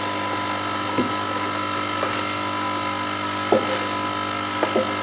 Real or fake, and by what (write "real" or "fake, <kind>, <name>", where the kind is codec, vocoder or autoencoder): real